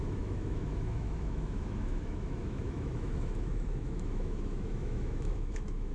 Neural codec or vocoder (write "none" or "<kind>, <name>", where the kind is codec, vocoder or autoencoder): autoencoder, DAC-VAE